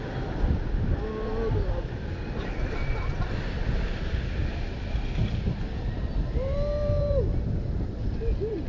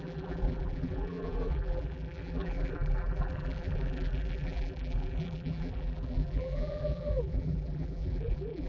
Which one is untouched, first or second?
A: first